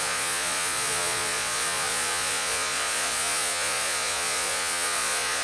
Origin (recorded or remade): remade